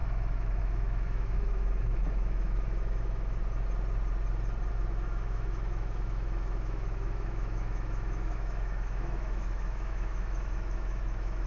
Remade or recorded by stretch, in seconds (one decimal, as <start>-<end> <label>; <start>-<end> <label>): 0.0-3.4 remade; 3.4-4.7 recorded; 4.7-11.5 remade